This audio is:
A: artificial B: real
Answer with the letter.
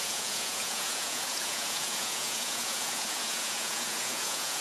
A